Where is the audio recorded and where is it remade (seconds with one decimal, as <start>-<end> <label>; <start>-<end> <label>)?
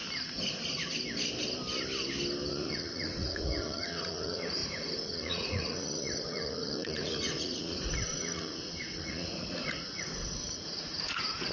0.0-2.5 recorded; 2.5-11.5 remade